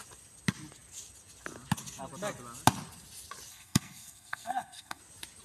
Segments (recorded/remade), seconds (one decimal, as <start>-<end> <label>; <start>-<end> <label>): 0.0-3.5 recorded; 3.5-5.0 remade; 5.0-5.4 recorded